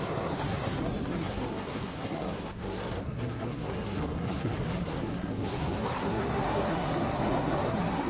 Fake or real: fake